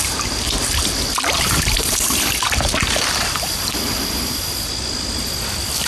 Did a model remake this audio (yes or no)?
no